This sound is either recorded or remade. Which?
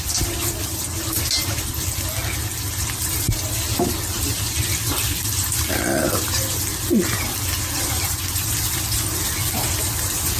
recorded